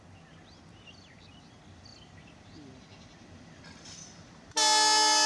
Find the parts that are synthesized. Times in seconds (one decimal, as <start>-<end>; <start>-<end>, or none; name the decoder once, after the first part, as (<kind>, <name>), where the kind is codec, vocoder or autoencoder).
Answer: none